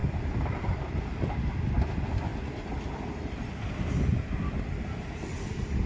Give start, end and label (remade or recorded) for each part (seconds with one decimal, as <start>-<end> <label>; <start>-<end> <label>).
0.0-5.9 recorded